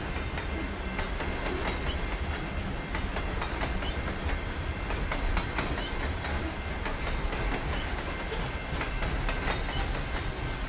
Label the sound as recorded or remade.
recorded